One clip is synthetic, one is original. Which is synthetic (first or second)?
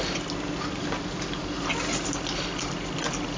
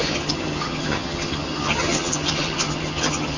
second